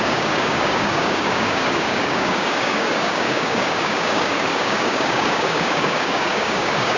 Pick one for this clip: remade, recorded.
remade